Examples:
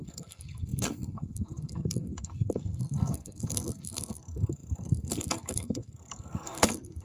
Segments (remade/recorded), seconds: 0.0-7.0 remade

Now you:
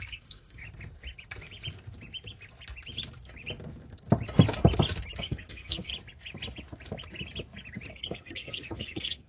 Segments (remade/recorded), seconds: 0.0-0.6 remade; 0.6-5.2 recorded; 5.2-5.9 remade; 5.9-7.9 recorded; 7.9-9.3 remade

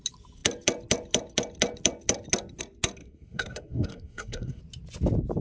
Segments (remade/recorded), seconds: 0.0-3.0 recorded; 3.0-4.6 remade; 4.6-5.4 recorded

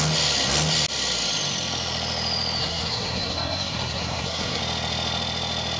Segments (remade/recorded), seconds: 0.0-2.6 recorded; 2.6-4.6 remade; 4.6-5.8 recorded

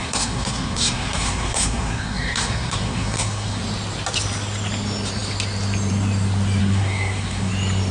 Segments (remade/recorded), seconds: 0.0-3.6 remade; 3.6-6.6 recorded; 6.6-7.5 remade; 7.5-7.9 recorded